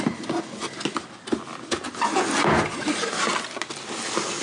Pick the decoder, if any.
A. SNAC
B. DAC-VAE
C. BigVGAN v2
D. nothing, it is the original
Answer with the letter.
D